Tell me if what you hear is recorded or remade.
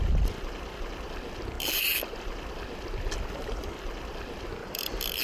remade